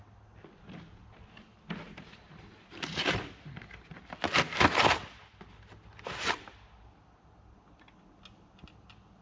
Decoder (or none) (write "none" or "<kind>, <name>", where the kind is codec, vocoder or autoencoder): none